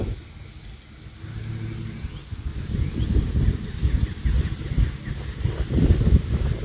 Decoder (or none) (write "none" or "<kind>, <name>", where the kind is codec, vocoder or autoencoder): none